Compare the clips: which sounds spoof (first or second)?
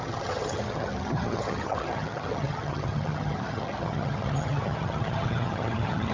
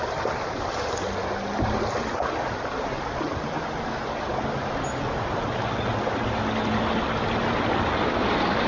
first